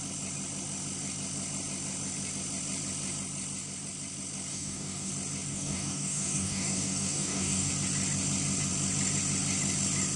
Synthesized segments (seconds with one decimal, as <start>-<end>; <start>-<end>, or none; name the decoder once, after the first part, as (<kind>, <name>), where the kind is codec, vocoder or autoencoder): 4.5-5.1 (codec, DAC); 5.5-7.7